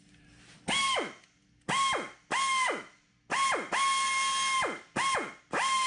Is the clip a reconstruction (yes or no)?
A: no